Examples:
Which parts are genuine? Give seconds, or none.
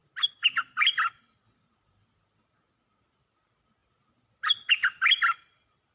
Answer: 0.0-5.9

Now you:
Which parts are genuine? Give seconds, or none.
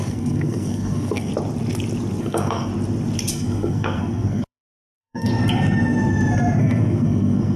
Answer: 1.3-2.2; 2.7-3.3; 5.3-6.6